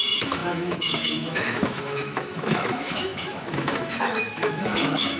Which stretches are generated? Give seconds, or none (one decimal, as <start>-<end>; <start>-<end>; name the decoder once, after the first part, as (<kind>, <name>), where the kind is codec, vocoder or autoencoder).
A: 0.0-5.2 (autoencoder, DAC-VAE)